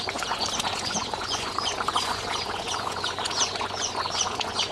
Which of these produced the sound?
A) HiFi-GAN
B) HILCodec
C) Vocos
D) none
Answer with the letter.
C